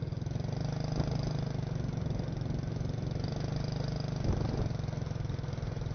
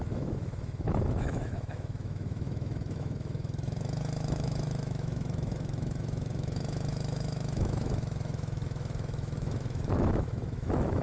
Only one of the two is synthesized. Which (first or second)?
second